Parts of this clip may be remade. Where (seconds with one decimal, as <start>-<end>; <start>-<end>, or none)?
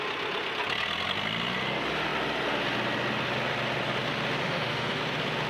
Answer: 4.4-5.0